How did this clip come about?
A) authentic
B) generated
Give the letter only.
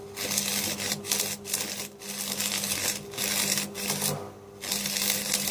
B